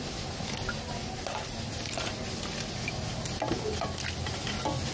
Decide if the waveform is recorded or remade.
recorded